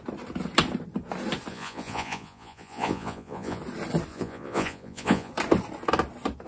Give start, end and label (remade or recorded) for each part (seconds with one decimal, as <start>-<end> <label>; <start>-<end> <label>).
0.0-1.5 recorded; 1.5-3.6 remade; 3.6-4.1 recorded; 4.1-5.3 remade; 5.3-6.5 recorded